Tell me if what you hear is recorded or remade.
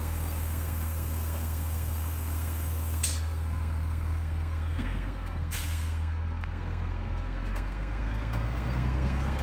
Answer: remade